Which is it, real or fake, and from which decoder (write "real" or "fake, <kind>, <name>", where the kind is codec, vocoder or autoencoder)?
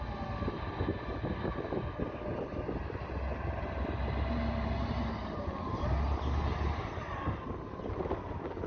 real